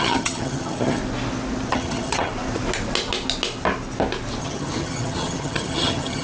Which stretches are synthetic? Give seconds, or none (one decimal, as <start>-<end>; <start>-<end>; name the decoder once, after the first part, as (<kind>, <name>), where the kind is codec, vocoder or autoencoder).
0.0-1.0 (vocoder, HiFi-GAN); 1.7-2.3; 4.4-6.2